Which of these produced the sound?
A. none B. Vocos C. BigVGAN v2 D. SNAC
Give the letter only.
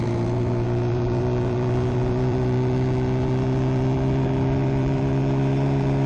C